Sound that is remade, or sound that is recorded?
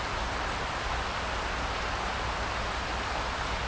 recorded